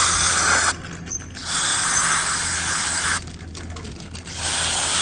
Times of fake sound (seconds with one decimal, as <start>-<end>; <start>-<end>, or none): none